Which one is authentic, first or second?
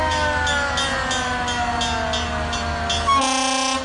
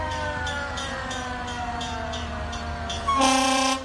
first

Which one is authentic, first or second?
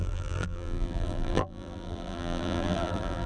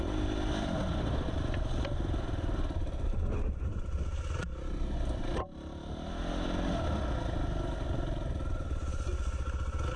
second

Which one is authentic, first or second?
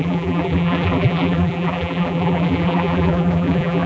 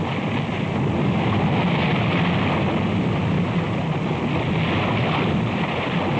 second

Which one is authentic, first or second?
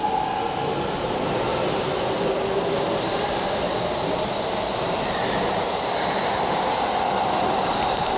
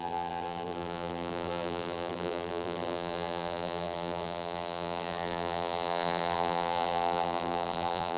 first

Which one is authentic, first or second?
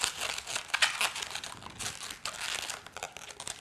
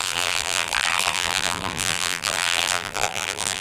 first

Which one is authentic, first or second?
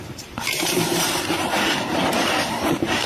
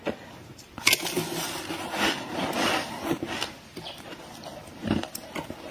second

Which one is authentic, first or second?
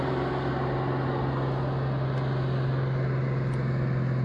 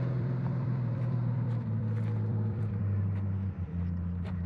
first